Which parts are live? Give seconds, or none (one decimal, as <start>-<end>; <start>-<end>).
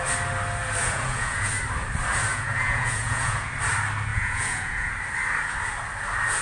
0.0-0.8; 1.5-2.3; 3.5-4.1; 4.9-6.4